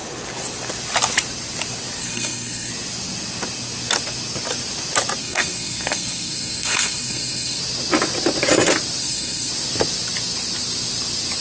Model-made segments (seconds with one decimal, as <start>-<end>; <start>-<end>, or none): 2.0-2.7; 5.2-7.6; 9.0-9.5